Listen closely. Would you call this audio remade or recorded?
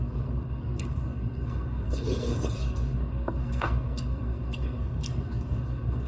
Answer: remade